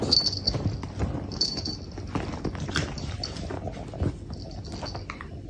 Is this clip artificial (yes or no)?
no